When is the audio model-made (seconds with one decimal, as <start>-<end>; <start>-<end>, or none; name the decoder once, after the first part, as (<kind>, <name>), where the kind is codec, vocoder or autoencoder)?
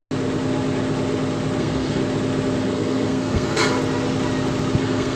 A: 1.6-2.0 (codec, SNAC); 2.6-3.6; 4.8-5.2